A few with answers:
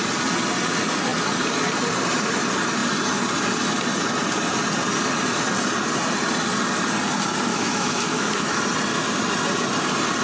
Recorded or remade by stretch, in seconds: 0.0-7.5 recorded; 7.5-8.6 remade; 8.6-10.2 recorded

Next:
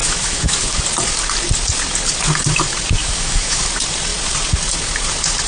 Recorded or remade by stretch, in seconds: 0.0-0.8 remade; 0.8-3.0 recorded; 3.0-3.6 remade; 3.6-5.5 recorded

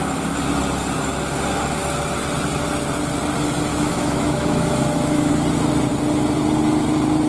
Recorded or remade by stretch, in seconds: 0.0-3.7 recorded; 3.7-5.3 remade; 5.3-7.3 recorded

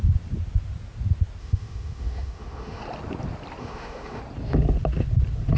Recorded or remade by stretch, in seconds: 0.0-1.4 recorded; 1.4-2.8 remade; 2.8-3.6 recorded; 3.6-4.2 remade; 4.2-5.6 recorded

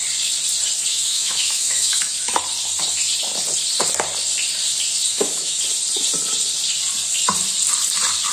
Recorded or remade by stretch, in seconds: 0.0-0.9 recorded; 0.9-2.4 remade; 2.4-5.1 recorded; 5.1-5.6 remade; 5.6-8.3 recorded

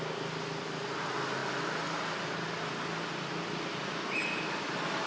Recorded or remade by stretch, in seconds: 0.0-5.1 recorded